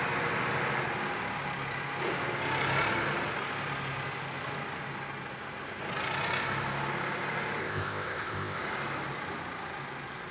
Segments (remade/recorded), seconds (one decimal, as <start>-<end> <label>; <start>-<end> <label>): 0.0-7.6 recorded; 7.6-8.6 remade; 8.6-10.3 recorded